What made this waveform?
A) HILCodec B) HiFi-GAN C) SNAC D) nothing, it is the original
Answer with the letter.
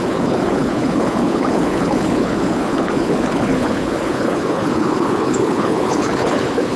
A